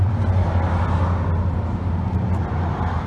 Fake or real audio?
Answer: real